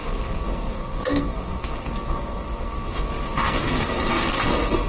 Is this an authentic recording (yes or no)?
no